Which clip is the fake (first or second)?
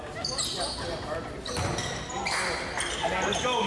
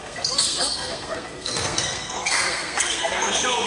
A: second